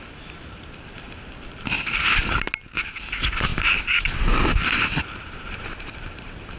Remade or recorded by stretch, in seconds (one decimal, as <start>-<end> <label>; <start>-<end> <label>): 0.0-3.5 recorded; 3.5-6.6 remade